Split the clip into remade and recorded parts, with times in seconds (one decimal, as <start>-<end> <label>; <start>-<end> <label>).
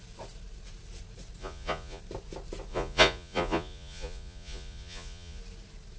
0.0-1.4 recorded; 1.4-2.0 remade; 2.0-2.7 recorded; 2.7-5.4 remade; 5.4-6.0 recorded